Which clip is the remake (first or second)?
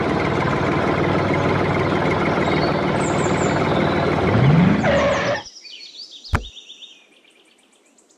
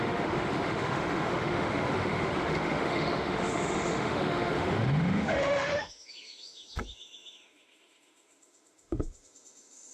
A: second